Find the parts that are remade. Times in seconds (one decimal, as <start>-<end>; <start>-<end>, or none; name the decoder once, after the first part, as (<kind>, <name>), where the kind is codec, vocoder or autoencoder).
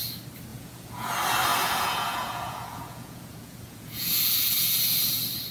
0.5-1.1 (vocoder, Vocos); 1.5-4.8